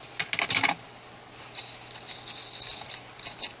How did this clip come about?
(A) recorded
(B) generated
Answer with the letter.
A